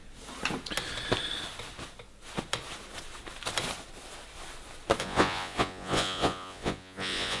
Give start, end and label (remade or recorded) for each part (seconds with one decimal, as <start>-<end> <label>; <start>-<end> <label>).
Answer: 0.0-5.0 recorded; 5.0-7.4 remade